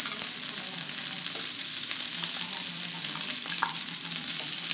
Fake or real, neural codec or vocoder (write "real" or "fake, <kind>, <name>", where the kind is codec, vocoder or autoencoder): real